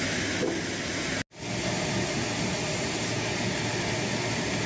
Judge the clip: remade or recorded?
recorded